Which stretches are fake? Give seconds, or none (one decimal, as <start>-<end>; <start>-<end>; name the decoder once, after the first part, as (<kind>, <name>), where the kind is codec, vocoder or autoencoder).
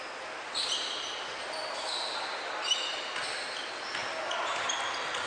none